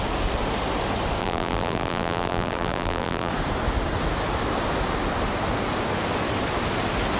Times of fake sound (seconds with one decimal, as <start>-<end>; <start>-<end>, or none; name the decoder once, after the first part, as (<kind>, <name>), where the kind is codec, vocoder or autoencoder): 1.2-3.3 (vocoder, BigVGAN v2)